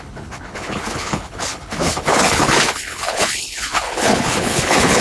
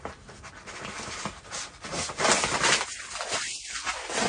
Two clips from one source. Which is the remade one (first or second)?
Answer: first